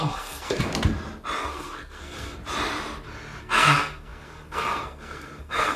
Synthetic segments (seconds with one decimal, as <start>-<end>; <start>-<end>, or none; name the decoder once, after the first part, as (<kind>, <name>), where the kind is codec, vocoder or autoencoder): 0.0-0.7 (codec, SNAC); 1.4-2.4; 3.4-5.8